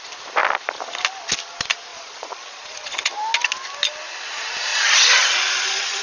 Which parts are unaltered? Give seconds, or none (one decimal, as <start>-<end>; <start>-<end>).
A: 0.0-1.9; 3.1-4.7